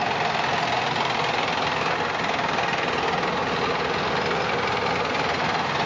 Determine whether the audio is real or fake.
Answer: real